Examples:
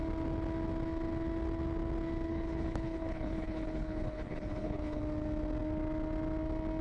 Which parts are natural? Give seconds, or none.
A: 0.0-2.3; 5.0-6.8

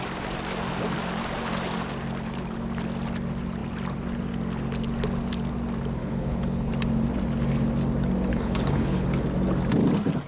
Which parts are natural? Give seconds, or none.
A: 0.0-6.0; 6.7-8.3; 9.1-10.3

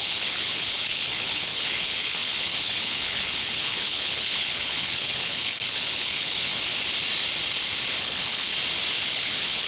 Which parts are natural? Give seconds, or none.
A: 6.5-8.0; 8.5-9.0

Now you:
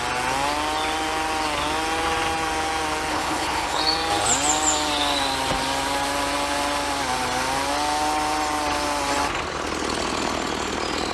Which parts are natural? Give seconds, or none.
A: 0.0-3.1; 3.8-11.1

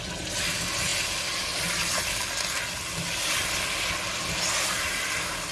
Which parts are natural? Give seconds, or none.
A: 0.0-5.5

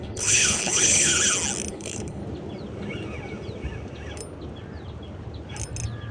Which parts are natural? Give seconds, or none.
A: 1.1-1.7; 2.2-6.1